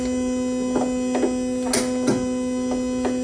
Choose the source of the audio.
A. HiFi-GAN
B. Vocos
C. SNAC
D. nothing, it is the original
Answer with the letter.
D